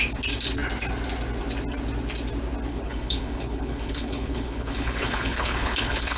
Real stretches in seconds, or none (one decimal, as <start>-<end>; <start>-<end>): 0.0-2.7